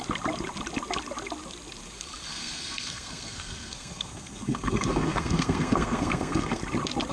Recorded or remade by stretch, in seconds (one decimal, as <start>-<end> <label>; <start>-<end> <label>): 0.0-2.3 recorded; 2.3-6.6 remade; 6.6-7.1 recorded